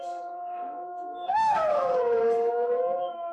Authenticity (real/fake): fake